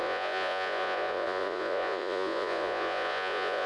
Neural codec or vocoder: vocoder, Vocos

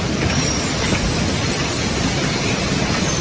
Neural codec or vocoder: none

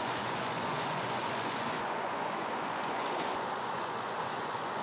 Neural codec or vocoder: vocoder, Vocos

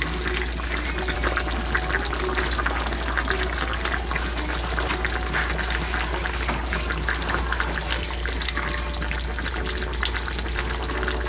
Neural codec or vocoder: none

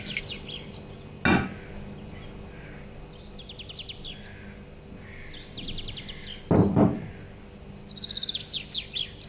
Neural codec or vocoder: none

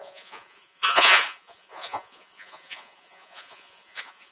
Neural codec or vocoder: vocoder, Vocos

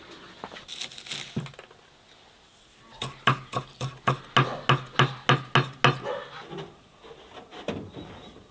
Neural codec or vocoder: none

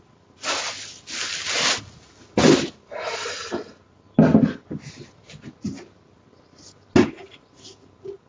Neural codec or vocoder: none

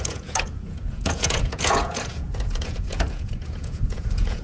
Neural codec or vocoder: vocoder, Vocos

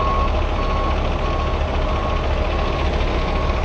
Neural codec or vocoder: none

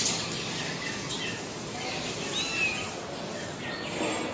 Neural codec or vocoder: none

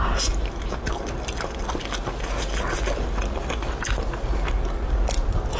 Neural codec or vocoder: none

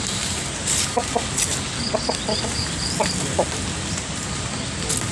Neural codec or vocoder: none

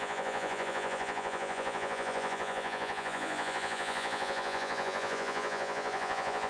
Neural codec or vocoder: vocoder, Vocos